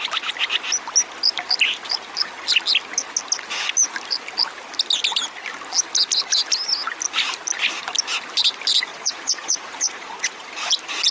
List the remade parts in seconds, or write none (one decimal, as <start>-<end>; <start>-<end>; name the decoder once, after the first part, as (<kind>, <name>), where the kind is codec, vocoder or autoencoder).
8.9-10.7 (vocoder, Vocos)